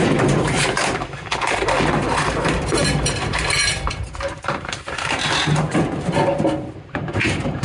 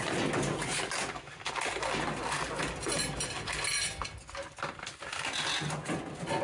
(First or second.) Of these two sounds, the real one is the second